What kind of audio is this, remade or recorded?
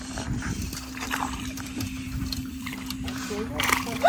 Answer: remade